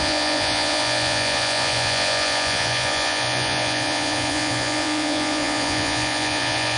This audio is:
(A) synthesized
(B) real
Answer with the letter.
A